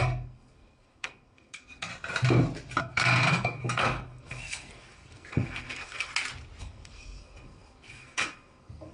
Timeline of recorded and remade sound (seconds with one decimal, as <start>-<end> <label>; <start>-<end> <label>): 0.0-1.9 remade; 1.9-2.8 recorded; 2.8-6.1 remade; 6.1-6.6 recorded; 6.6-8.9 remade